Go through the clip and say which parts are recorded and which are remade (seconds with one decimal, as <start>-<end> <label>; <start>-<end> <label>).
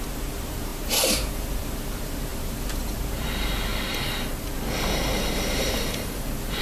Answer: 0.0-3.7 remade; 3.7-5.3 recorded; 5.3-6.6 remade